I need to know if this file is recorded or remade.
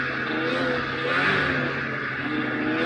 recorded